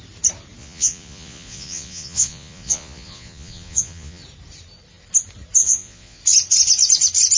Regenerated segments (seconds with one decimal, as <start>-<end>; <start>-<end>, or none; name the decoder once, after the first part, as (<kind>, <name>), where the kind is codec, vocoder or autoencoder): 0.6-4.2 (vocoder, Vocos); 5.6-6.2